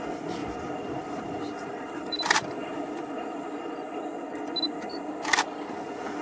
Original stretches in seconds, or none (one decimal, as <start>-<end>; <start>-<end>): 0.0-0.4; 3.7-6.2